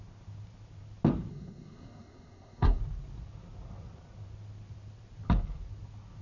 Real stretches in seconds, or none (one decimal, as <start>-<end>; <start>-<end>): 0.0-1.3; 2.8-6.2